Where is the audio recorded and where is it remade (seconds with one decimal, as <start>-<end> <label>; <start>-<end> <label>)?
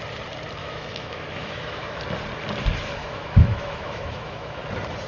0.0-0.6 recorded; 0.6-2.0 remade; 2.0-3.0 recorded; 3.0-4.6 remade; 4.6-5.1 recorded